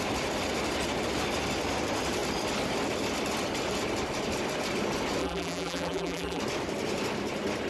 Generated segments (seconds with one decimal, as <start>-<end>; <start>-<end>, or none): 5.2-6.4